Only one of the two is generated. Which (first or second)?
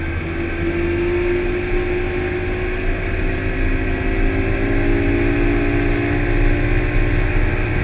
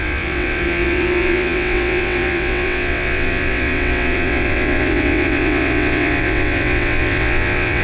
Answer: second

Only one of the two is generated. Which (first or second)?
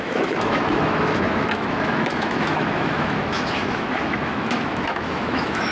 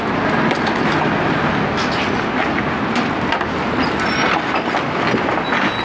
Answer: first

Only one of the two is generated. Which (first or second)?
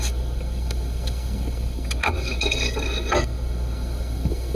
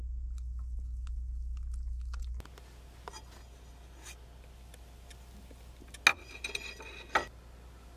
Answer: first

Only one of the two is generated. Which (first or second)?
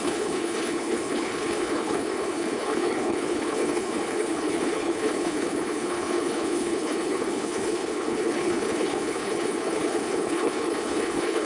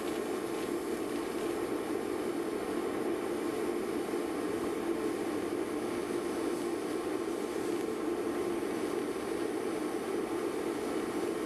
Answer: first